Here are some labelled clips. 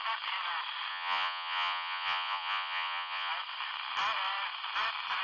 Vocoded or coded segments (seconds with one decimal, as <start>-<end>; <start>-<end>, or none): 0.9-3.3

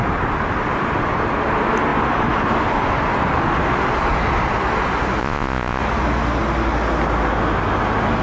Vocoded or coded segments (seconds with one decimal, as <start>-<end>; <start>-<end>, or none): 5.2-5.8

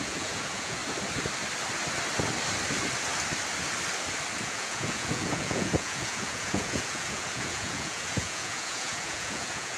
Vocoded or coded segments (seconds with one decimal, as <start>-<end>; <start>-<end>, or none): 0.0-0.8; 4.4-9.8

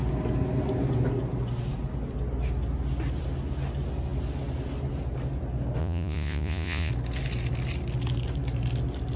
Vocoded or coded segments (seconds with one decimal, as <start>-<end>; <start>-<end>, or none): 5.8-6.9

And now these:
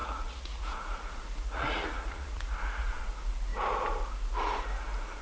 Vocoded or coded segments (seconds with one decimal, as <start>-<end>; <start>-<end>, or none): 0.0-3.1

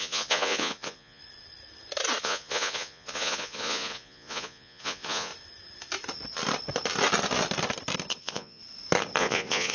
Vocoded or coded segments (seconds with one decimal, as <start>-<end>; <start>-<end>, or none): 0.0-1.2; 2.2-5.3; 8.2-8.6; 9.2-9.7

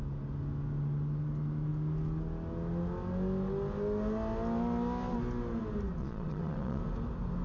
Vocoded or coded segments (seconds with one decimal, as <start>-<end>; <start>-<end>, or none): 6.0-6.8

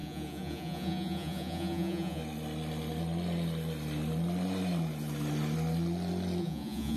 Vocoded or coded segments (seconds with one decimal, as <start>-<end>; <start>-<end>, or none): 0.0-2.2; 6.4-7.0